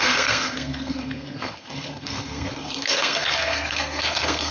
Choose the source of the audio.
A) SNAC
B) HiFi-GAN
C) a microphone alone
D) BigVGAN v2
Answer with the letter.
A